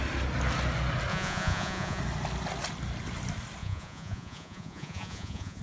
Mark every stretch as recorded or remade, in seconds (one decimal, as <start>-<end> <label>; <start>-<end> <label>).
0.0-1.1 recorded; 1.1-2.0 remade; 2.0-3.6 recorded; 3.6-5.6 remade